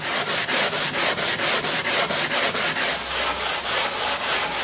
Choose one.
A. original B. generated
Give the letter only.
A